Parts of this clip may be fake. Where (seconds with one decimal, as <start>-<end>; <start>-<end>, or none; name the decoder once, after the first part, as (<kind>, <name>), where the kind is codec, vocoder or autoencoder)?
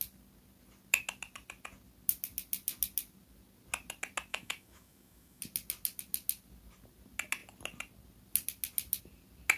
4.3-5.4 (autoencoder, DAC-VAE)